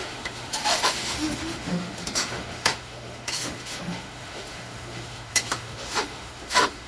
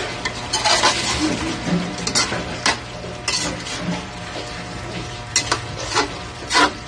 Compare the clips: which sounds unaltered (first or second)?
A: second